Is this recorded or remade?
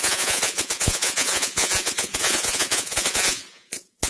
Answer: remade